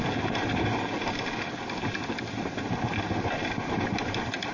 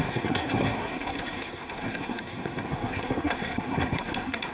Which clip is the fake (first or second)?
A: second